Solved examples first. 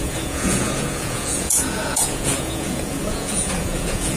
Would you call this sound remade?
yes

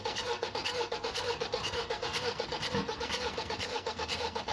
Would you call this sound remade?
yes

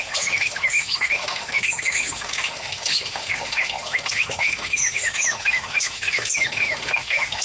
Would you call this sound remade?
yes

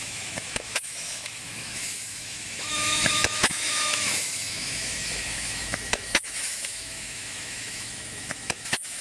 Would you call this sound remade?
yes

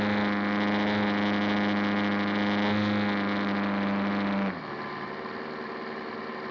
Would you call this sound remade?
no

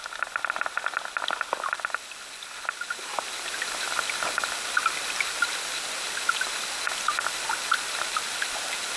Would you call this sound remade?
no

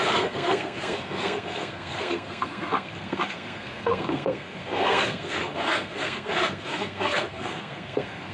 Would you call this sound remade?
yes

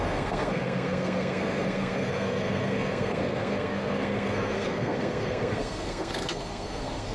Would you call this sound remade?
yes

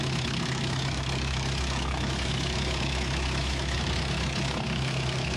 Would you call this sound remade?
yes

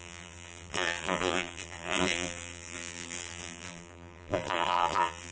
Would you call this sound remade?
yes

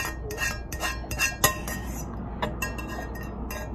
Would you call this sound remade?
no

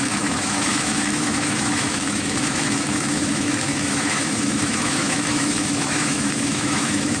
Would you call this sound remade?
yes